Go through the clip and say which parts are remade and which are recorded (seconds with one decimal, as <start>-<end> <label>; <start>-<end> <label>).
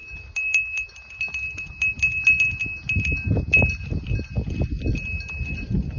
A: 0.0-6.0 recorded